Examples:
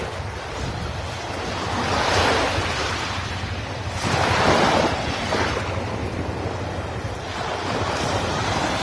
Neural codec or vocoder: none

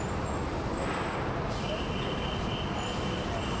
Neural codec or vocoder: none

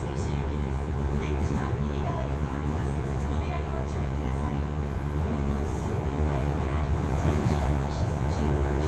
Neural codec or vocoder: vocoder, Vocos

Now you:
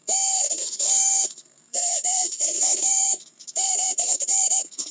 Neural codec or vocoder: codec, SNAC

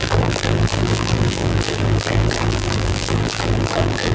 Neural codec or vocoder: vocoder, BigVGAN v2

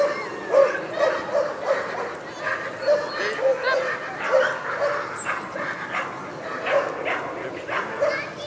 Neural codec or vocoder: none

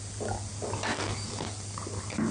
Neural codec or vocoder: none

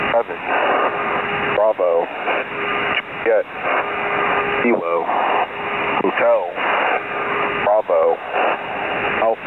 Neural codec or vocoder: none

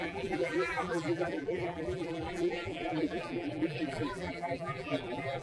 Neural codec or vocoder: vocoder, BigVGAN v2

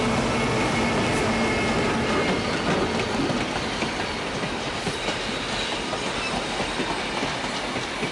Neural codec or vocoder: none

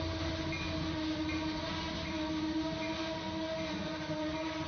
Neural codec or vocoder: none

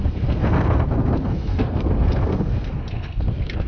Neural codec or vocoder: codec, SNAC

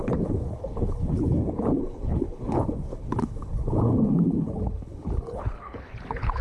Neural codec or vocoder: codec, HILCodec